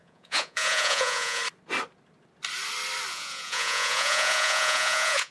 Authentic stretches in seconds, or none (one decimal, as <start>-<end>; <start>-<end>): 1.4-3.1